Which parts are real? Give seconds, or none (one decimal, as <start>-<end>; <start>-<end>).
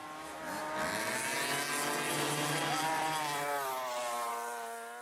0.0-5.0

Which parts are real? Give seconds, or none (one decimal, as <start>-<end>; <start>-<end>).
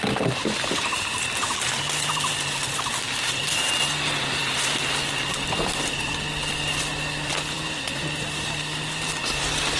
0.0-0.4; 5.6-6.9; 7.6-9.8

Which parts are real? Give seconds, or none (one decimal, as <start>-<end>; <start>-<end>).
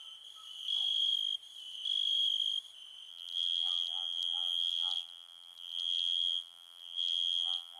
0.0-3.1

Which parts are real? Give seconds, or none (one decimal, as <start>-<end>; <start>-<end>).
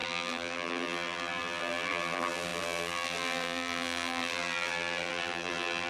none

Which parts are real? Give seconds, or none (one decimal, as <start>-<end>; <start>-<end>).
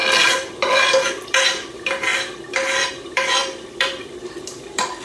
none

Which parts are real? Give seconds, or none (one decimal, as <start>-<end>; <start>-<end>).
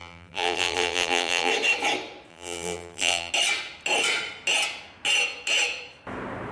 1.5-2.3; 3.3-6.5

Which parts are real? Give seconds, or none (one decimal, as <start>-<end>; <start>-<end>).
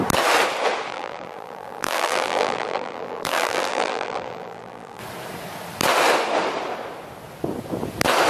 0.0-0.9; 5.0-8.3